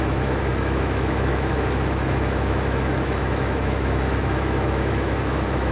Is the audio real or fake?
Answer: fake